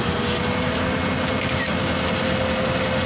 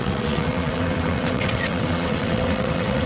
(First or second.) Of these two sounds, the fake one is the second